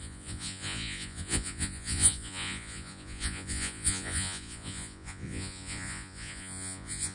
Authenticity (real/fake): fake